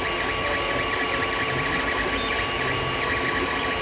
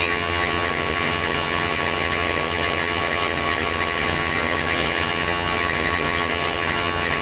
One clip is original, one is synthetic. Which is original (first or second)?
first